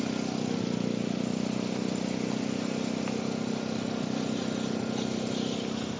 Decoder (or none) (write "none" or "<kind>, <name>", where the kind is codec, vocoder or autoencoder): none